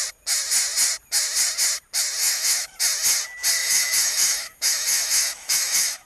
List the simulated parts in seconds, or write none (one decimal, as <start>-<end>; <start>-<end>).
2.2-2.8; 3.6-6.1